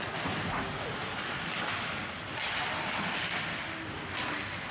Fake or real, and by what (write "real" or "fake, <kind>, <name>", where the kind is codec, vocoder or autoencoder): real